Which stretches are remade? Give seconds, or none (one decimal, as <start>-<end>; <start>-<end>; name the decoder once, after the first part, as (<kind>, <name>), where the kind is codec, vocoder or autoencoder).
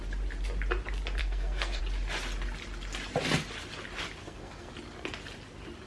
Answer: 1.2-1.8 (codec, SNAC); 4.2-4.7